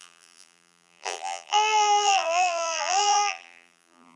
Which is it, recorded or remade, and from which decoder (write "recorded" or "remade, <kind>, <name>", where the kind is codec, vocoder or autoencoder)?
remade, vocoder, BigVGAN v2